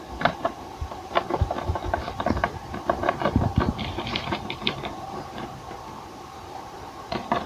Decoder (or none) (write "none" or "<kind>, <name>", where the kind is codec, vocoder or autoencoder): vocoder, BigVGAN v2